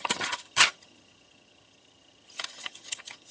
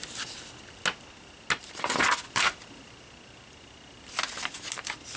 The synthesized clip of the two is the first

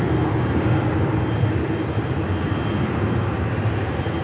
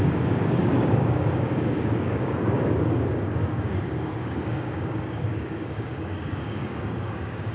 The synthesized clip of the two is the second